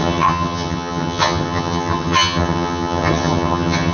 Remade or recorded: remade